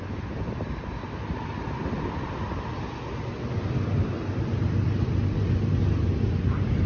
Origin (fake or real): real